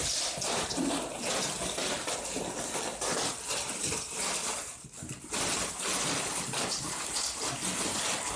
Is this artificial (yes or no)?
no